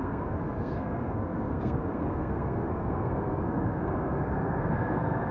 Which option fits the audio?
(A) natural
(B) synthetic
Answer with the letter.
B